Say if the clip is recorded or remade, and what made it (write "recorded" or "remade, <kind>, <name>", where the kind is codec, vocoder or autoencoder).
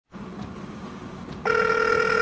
recorded